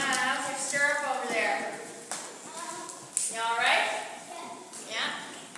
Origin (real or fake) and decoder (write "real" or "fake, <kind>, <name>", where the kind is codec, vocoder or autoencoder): real